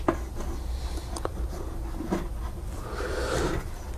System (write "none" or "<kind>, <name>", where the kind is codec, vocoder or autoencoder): none